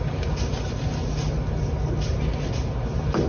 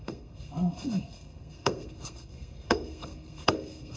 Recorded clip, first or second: first